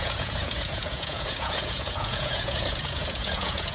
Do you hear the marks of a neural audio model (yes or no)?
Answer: yes